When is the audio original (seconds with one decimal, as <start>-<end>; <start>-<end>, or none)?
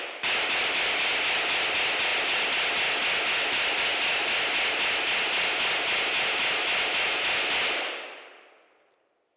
0.0-9.4